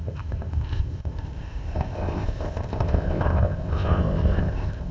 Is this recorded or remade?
remade